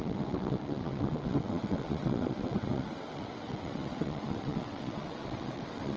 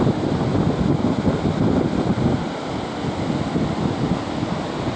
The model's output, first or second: first